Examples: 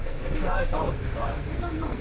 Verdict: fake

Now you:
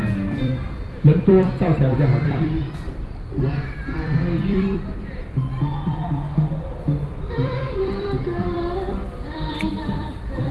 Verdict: fake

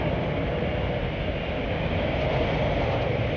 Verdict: real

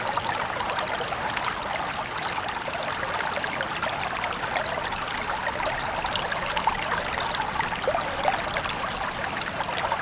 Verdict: real